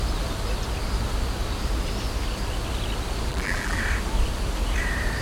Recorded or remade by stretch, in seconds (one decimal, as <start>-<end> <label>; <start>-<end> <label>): 0.0-3.3 recorded; 3.3-3.8 remade; 3.8-5.2 recorded